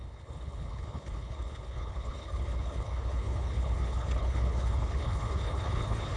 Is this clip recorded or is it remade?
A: remade